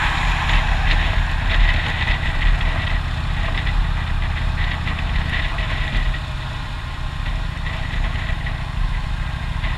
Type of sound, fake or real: real